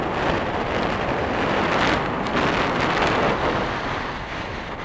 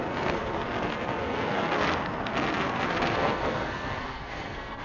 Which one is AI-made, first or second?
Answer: second